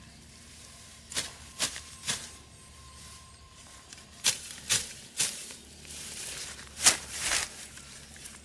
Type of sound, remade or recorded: remade